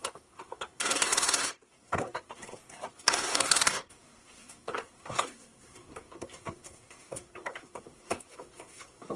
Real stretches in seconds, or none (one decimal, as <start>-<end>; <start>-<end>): none